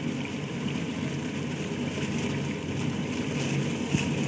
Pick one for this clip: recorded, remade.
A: recorded